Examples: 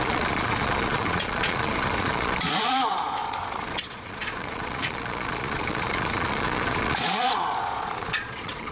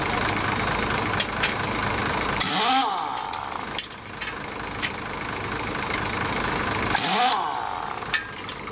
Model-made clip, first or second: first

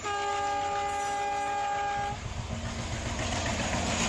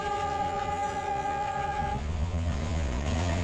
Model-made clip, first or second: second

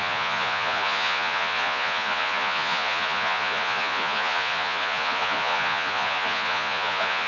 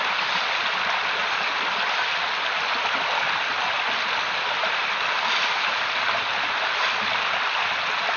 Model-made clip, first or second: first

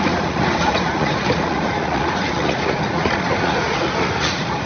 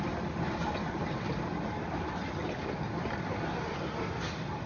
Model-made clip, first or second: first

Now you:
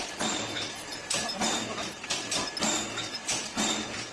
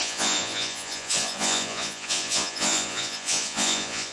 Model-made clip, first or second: second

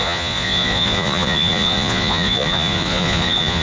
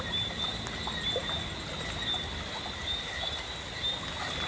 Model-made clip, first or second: first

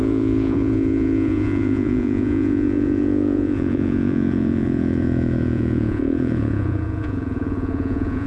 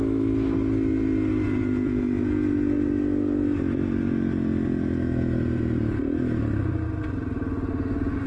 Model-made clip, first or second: first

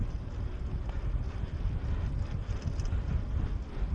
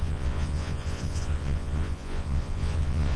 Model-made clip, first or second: second